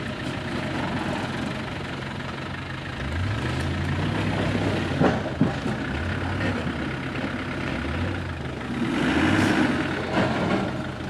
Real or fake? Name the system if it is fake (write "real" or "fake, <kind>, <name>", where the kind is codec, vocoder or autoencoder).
real